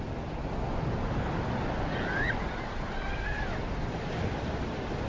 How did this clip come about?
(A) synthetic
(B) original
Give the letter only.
B